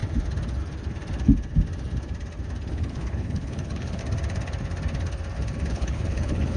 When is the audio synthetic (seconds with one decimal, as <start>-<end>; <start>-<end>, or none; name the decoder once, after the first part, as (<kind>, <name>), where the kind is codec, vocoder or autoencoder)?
2.7-4.0 (codec, HILCodec); 5.7-6.6